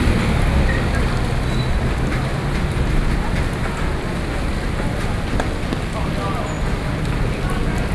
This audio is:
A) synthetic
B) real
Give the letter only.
B